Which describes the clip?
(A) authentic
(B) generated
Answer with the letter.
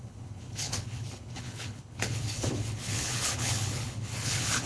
B